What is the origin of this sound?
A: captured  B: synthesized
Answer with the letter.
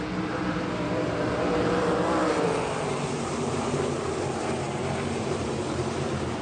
B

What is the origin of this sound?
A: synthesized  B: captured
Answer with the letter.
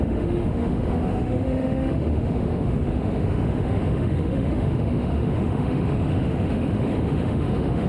A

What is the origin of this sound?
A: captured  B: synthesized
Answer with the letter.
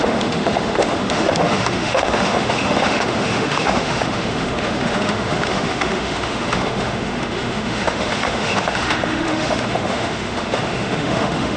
B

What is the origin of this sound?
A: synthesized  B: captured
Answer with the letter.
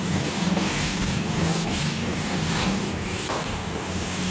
A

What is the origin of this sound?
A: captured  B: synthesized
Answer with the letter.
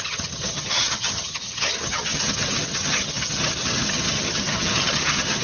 B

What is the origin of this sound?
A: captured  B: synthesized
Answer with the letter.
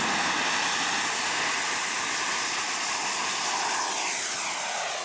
A